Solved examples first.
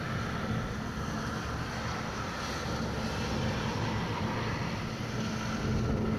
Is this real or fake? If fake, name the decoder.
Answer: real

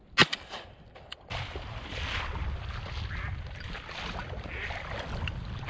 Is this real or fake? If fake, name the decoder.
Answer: real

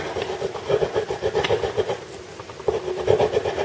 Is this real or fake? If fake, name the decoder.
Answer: real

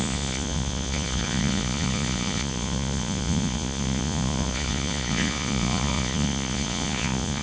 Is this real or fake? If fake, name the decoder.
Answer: fake, vocoder, Vocos